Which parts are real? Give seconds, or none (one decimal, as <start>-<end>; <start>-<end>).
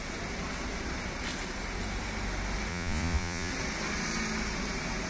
0.0-2.7; 3.5-5.1